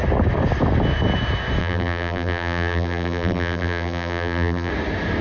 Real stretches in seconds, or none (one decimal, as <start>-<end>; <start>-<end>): 0.0-1.6; 4.7-5.2